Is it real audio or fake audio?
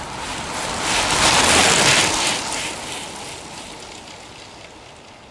real